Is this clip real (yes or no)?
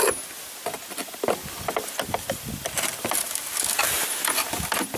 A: yes